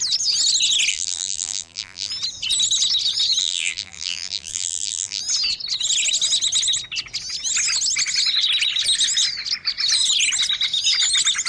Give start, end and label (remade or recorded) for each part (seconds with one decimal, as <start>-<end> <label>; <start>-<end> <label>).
0.0-0.9 recorded; 0.9-2.1 remade; 2.1-3.4 recorded; 3.4-5.2 remade; 5.2-11.5 recorded